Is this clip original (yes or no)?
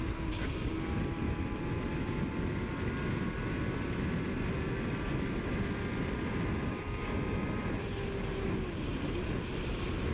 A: yes